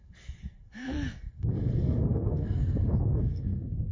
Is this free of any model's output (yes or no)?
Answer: no